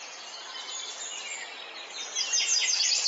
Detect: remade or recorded recorded